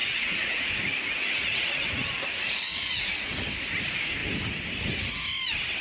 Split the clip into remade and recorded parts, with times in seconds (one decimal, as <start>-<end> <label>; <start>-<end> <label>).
0.0-3.5 remade; 3.5-5.8 recorded

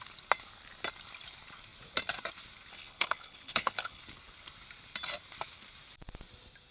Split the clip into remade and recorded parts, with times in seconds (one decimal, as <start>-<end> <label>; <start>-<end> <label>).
0.0-2.7 recorded; 2.7-4.0 remade; 4.0-6.7 recorded

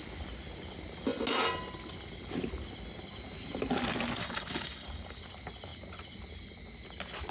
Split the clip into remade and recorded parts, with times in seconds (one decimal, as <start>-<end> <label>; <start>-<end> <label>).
0.0-4.2 recorded; 4.2-5.2 remade; 5.2-7.3 recorded

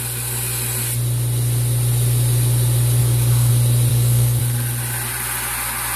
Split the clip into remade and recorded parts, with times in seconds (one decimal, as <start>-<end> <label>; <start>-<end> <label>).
0.0-3.0 recorded; 3.0-3.5 remade; 3.5-3.9 recorded; 3.9-4.4 remade; 4.4-6.0 recorded